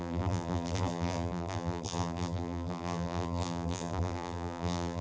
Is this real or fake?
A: fake